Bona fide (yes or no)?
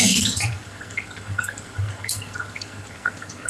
no